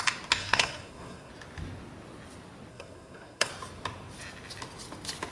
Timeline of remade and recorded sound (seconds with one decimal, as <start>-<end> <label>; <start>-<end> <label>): 0.0-0.4 recorded; 0.4-1.3 remade; 1.3-2.7 recorded; 2.7-3.5 remade; 3.5-5.3 recorded